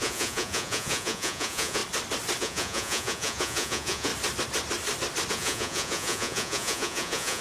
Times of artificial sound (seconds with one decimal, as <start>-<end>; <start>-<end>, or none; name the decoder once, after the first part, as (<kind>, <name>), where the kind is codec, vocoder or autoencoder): 0.0-1.8 (vocoder, Vocos); 2.4-4.1; 5.3-7.4